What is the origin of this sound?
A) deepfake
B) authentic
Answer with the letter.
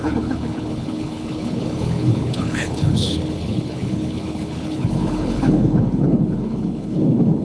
A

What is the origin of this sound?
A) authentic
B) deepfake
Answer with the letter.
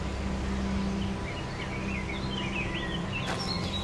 A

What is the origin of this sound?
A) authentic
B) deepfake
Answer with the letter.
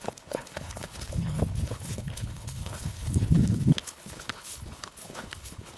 B